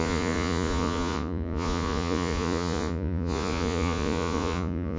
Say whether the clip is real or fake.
fake